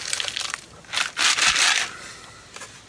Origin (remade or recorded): recorded